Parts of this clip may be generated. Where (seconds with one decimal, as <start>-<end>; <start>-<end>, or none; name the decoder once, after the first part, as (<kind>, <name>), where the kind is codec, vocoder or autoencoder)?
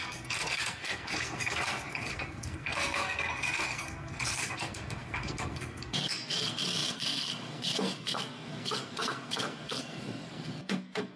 0.0-11.2 (codec, SNAC)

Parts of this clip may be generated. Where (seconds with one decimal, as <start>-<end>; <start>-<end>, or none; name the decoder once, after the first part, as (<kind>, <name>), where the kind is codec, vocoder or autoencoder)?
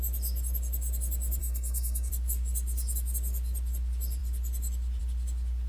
1.4-2.1 (codec, SNAC)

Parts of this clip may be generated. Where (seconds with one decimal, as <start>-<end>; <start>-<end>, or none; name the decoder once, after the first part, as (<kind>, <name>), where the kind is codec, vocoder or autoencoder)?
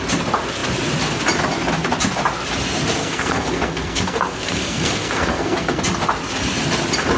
3.0-5.8 (codec, SNAC)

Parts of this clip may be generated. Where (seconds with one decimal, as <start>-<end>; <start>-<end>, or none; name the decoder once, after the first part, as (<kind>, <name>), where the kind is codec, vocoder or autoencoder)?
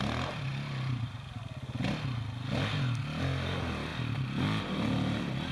none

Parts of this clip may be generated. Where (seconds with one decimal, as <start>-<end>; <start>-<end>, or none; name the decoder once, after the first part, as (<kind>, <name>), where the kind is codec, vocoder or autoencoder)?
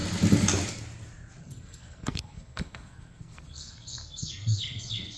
1.4-5.2 (codec, SNAC)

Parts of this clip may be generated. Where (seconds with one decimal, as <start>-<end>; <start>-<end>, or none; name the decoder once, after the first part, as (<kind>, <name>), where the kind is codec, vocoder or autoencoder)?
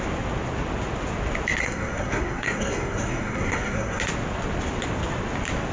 1.6-4.0 (codec, SNAC)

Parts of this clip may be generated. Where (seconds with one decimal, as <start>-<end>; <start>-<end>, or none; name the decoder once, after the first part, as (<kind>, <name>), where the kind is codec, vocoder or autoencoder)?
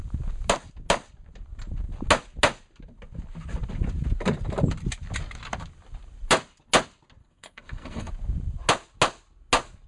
7.2-8.1 (codec, SNAC)